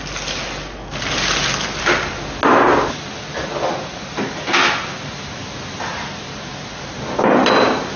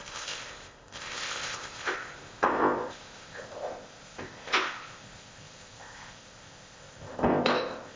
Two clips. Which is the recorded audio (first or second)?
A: first